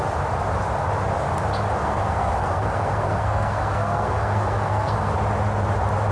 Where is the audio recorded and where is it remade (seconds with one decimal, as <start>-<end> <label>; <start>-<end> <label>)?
0.0-1.8 recorded; 1.8-5.1 remade; 5.1-6.1 recorded